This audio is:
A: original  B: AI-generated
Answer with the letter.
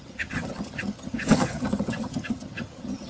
B